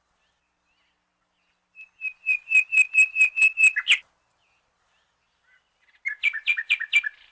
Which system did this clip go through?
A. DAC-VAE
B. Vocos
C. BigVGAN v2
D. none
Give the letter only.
D